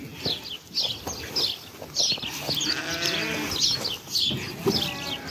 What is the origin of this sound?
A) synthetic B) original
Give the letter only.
B